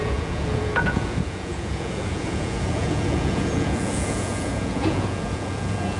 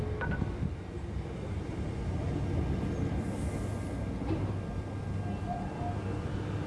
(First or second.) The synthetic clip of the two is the first